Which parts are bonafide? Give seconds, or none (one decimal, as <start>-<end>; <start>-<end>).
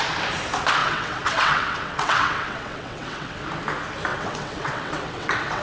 0.0-0.8; 3.4-4.1